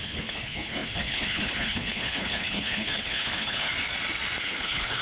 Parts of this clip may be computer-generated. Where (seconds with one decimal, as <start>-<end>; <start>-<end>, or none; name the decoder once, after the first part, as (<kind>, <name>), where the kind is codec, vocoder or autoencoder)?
0.0-3.7 (codec, HILCodec); 4.4-5.0

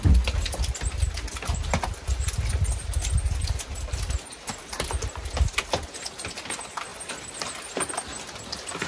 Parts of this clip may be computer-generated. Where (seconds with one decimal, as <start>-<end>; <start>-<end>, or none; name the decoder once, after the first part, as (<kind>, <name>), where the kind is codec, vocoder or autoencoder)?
none

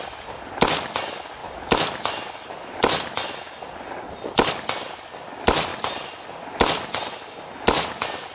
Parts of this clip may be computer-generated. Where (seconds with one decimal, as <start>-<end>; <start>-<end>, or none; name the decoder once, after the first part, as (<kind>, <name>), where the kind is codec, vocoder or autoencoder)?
none

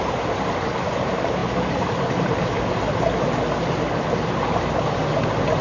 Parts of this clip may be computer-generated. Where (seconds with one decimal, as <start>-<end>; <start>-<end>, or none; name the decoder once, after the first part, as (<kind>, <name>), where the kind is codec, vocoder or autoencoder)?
none